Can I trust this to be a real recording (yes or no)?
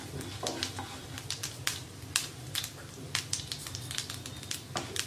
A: yes